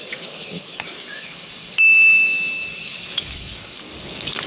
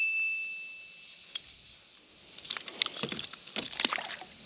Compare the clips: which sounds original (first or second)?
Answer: second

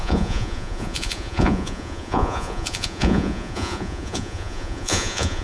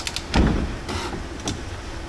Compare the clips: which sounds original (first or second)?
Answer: second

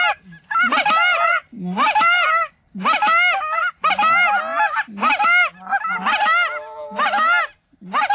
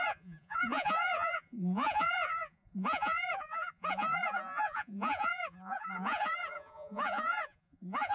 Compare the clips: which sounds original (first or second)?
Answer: first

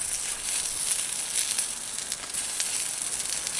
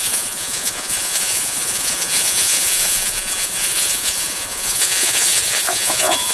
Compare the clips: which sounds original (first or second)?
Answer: first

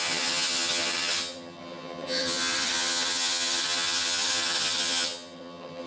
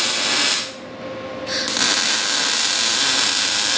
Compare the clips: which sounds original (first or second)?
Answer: second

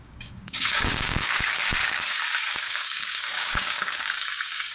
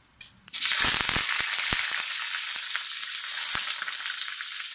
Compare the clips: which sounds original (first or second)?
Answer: second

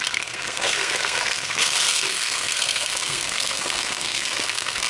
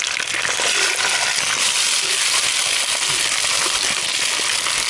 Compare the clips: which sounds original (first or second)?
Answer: second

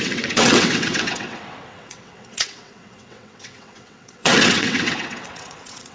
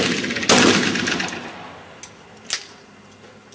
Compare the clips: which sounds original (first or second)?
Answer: second